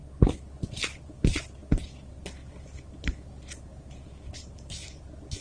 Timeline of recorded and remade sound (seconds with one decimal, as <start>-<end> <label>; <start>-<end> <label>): 0.0-5.4 recorded